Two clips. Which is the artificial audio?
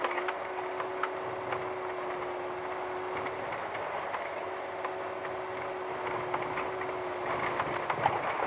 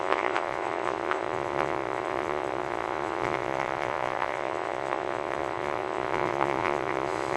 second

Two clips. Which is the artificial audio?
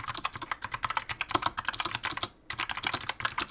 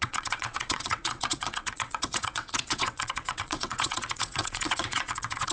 second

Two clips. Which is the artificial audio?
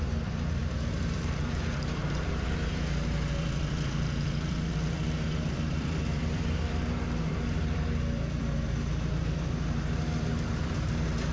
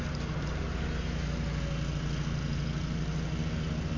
first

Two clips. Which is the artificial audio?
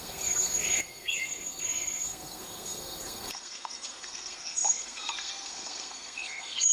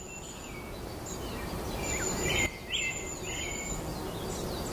first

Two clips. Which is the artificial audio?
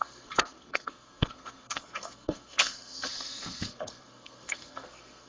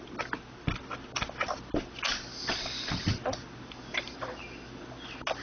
first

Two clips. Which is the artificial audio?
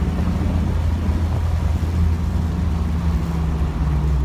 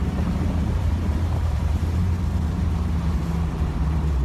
second